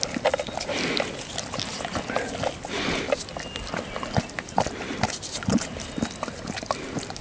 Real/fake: real